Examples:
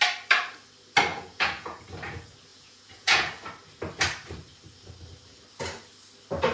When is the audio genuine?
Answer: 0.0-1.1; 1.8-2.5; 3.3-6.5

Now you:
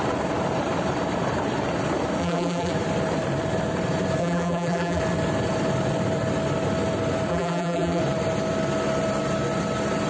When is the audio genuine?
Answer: 0.0-2.2; 2.7-4.2; 5.0-7.3; 8.0-10.1

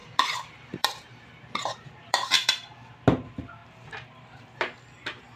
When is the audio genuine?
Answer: 2.5-3.6; 4.4-5.4

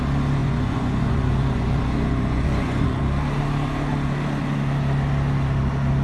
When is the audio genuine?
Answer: 0.0-0.4; 3.0-6.0

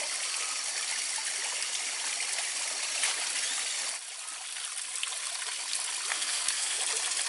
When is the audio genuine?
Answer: 0.0-6.1; 6.8-7.3

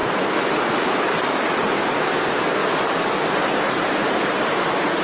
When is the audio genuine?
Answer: 0.0-5.0